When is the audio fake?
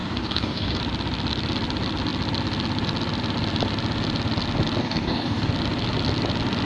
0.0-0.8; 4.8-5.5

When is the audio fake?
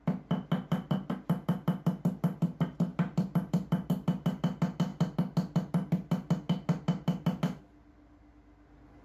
none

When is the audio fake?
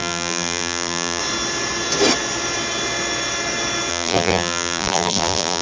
0.0-1.2; 3.9-5.6